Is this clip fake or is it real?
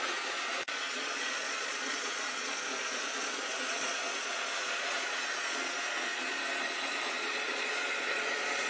fake